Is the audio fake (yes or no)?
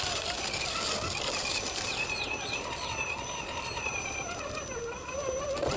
yes